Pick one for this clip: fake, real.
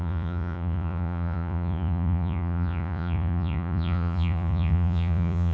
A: fake